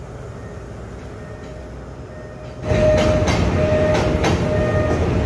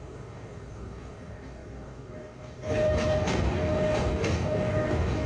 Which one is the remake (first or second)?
second